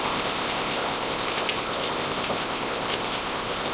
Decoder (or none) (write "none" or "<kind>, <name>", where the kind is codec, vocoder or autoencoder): codec, ZipCodec